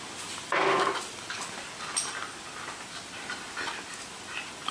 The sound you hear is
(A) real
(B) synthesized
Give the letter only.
A